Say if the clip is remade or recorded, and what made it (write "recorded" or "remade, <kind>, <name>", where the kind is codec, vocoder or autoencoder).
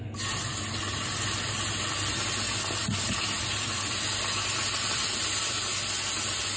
remade, vocoder, BigVGAN v2